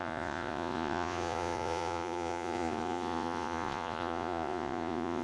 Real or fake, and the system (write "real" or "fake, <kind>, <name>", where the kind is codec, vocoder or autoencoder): fake, vocoder, Vocos